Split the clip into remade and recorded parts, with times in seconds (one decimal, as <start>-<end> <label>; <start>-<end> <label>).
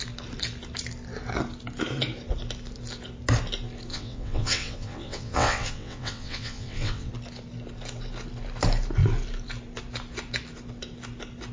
0.0-3.9 recorded; 3.9-7.1 remade; 7.1-11.5 recorded